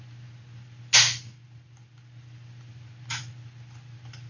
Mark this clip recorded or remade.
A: recorded